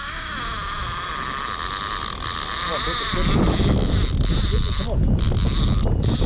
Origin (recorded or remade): recorded